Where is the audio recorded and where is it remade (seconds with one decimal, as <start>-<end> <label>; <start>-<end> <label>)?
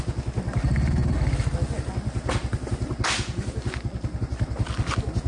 0.0-5.3 recorded